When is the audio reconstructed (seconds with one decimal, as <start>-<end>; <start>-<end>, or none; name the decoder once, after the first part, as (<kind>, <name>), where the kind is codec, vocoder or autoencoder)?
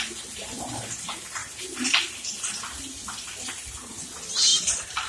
1.4-3.7 (vocoder, BigVGAN v2); 4.5-5.1